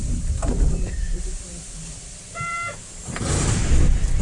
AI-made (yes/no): yes